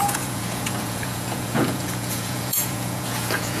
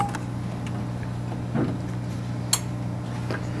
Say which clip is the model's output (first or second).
first